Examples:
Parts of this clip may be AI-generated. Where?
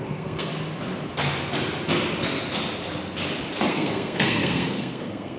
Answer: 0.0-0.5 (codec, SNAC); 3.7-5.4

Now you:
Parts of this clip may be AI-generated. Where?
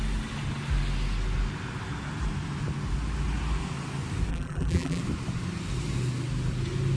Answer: 4.3-5.0 (vocoder, BigVGAN v2)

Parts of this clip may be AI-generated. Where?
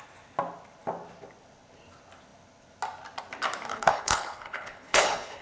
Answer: 3.7-5.4 (codec, HILCodec)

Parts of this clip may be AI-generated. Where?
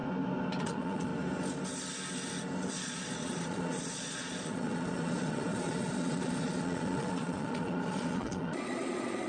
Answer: 0.6-1.1 (vocoder, Vocos); 2.7-9.3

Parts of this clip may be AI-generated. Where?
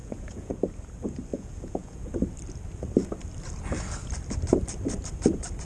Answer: 0.0-0.5 (vocoder, Vocos); 1.3-2.1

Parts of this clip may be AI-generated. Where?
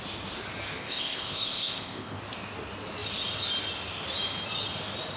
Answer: 0.8-2.2 (codec, ZipCodec)